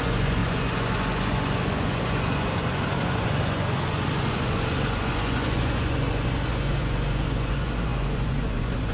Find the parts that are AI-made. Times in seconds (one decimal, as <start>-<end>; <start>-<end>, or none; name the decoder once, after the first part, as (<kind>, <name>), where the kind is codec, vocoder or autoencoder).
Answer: 0.0-8.9 (vocoder, Vocos)